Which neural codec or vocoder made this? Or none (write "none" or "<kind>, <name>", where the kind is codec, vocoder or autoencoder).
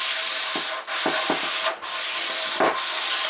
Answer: none